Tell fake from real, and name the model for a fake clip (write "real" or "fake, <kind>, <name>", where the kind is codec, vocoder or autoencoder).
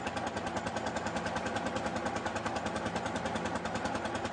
real